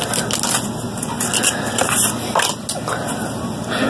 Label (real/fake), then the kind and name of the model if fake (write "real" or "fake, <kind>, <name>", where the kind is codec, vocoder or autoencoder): real